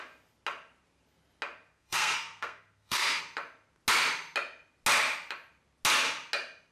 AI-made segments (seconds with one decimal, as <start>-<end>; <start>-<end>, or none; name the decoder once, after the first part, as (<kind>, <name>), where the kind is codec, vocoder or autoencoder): 1.7-3.2 (codec, SNAC)